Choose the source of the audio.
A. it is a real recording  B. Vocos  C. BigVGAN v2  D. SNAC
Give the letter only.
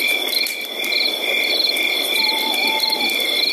A